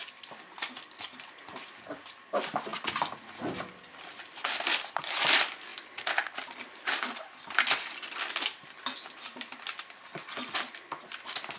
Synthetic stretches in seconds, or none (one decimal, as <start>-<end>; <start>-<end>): none